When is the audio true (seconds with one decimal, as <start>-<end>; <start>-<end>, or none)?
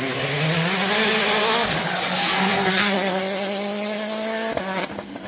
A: 0.0-2.2; 3.2-5.3